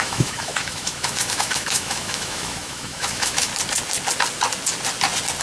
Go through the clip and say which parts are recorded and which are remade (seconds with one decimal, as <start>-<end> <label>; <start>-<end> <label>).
0.0-3.5 remade; 3.5-5.4 recorded